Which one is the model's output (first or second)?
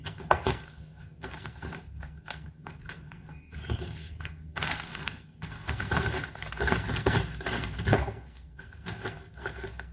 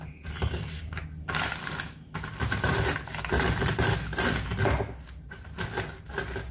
first